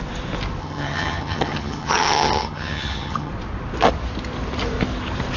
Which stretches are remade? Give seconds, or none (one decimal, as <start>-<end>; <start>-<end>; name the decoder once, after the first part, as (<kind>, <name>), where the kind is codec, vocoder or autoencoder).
0.6-3.3 (vocoder, HiFi-GAN)